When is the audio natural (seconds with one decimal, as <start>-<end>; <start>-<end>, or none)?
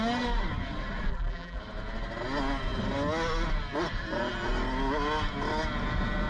0.0-1.1; 1.6-6.3